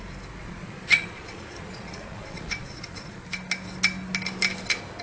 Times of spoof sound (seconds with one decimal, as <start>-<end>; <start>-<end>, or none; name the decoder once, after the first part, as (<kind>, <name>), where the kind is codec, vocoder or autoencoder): 0.4-3.2 (vocoder, Vocos)